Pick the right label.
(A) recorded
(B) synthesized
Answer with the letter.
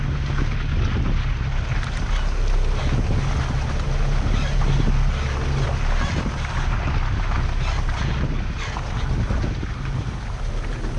A